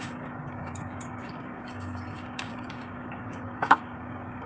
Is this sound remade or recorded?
remade